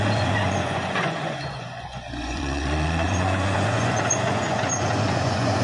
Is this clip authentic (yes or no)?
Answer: no